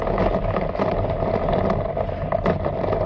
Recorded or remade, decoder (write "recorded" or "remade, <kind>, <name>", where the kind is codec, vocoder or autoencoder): recorded